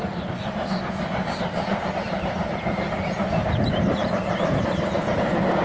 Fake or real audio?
fake